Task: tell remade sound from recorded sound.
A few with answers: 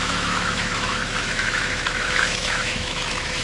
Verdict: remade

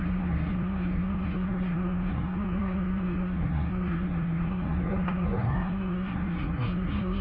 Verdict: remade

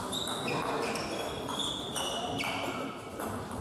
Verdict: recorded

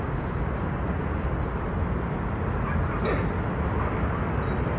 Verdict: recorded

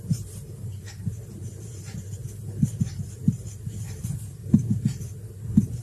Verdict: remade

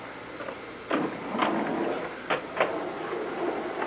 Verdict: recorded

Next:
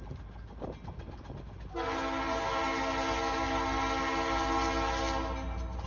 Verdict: recorded